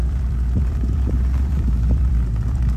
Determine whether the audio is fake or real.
fake